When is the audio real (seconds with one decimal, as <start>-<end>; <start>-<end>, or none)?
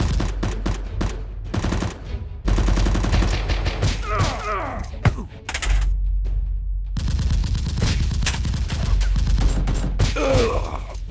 0.0-4.7; 5.4-7.4; 8.5-10.3